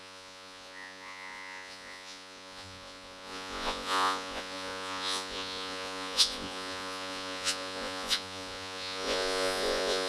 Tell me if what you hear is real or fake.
fake